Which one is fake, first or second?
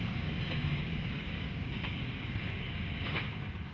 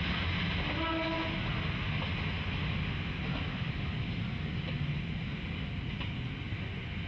first